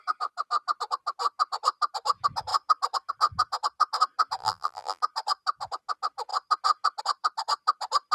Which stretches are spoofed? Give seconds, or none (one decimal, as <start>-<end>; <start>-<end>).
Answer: 4.4-5.0

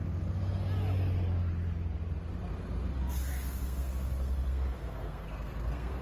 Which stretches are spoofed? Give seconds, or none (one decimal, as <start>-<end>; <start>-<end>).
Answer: 3.3-6.0

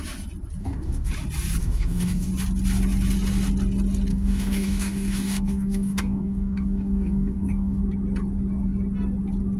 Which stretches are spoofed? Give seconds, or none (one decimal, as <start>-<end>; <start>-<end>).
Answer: 0.6-1.1; 1.6-2.3; 4.1-7.8

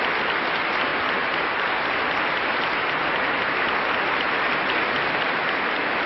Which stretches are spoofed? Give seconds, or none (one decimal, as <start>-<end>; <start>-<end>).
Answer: none

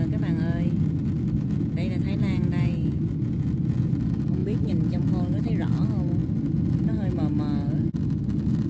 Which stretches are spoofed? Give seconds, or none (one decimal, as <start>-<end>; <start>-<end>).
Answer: 4.4-5.5

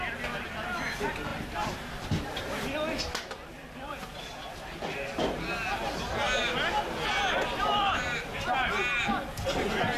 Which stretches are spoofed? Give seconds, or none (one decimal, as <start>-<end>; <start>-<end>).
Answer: none

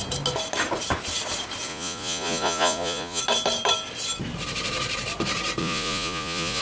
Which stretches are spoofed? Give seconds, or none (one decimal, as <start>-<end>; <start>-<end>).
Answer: 1.7-3.2; 5.6-6.6

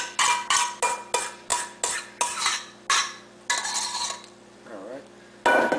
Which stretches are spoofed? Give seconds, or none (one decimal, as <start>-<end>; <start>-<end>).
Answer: none